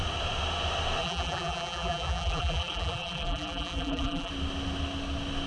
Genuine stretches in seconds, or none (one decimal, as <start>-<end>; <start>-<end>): 0.0-1.0; 4.3-5.5